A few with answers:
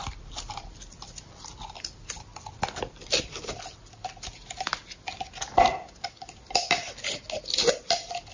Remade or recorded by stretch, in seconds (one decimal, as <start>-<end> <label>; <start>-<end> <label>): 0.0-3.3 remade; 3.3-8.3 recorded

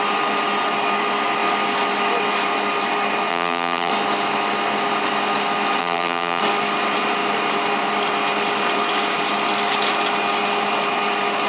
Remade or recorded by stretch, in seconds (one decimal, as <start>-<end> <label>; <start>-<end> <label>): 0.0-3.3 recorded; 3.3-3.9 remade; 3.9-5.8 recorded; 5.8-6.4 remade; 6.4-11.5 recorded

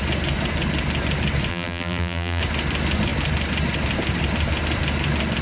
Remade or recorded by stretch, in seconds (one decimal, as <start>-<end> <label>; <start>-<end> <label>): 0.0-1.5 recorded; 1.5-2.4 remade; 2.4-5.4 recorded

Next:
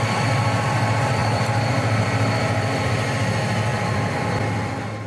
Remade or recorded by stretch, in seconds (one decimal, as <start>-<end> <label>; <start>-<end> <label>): 0.0-1.2 recorded; 1.2-2.9 remade; 2.9-3.7 recorded; 3.7-4.4 remade; 4.4-5.1 recorded